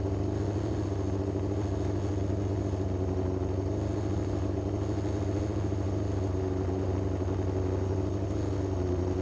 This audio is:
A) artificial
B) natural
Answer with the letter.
B